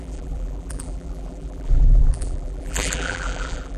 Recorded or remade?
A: remade